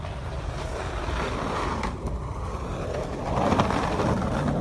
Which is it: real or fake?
fake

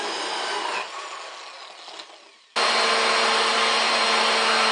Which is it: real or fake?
real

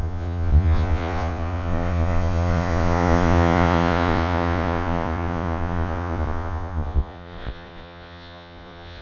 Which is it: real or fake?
fake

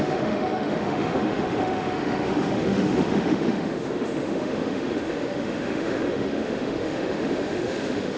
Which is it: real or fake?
fake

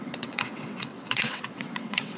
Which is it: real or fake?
fake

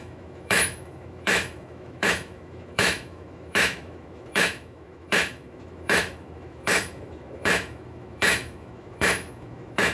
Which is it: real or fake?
fake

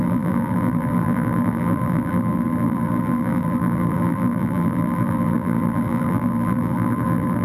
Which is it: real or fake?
fake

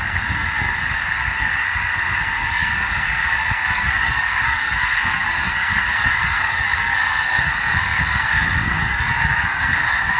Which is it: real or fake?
fake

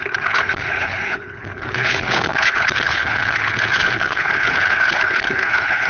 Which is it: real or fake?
fake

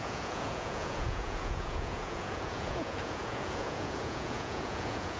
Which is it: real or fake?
fake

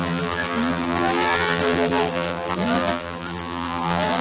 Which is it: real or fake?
fake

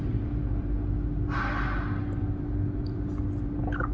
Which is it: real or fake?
real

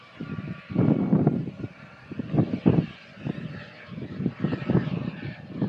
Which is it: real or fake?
real